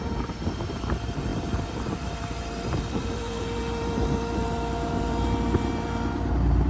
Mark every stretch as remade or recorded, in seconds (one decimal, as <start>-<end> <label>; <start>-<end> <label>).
0.0-6.7 remade